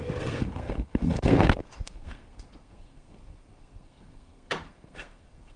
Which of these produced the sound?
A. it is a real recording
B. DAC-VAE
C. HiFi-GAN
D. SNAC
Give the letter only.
D